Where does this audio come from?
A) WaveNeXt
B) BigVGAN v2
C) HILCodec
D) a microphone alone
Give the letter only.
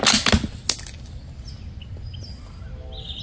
D